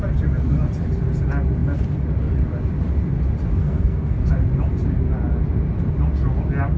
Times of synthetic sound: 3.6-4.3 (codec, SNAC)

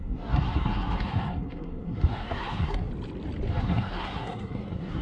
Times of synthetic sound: 0.0-2.9 (codec, SNAC); 3.6-5.0